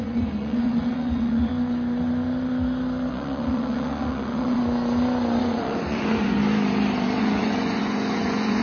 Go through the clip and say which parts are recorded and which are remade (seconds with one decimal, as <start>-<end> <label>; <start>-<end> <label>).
0.0-1.5 remade; 1.5-3.1 recorded; 3.1-4.6 remade; 4.6-5.4 recorded; 5.4-6.4 remade; 6.4-7.2 recorded; 7.2-8.6 remade